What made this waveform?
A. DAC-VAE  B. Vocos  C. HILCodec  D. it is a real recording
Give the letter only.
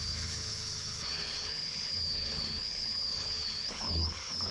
C